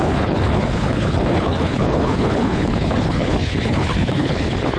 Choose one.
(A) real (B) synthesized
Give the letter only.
B